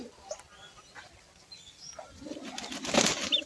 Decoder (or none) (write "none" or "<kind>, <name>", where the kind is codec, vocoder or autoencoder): none